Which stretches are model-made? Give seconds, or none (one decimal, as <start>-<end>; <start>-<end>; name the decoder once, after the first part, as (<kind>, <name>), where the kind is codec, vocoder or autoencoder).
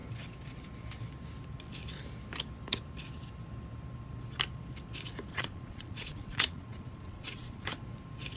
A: 5.3-7.8 (vocoder, Vocos)